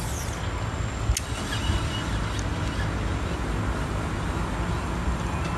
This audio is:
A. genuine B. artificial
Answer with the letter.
A